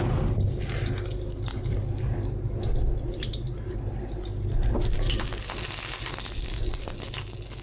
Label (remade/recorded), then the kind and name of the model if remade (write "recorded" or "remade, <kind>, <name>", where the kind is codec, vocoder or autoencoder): recorded